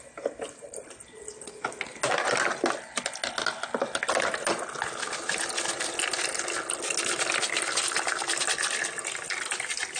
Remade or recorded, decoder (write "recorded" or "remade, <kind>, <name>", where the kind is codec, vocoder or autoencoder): recorded